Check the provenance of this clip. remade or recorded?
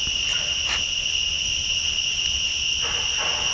recorded